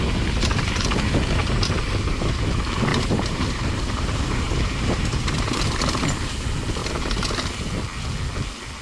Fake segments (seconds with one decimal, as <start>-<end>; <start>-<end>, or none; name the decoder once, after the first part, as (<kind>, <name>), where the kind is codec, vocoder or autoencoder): 1.4-2.3 (vocoder, BigVGAN v2); 2.9-5.6; 6.8-7.5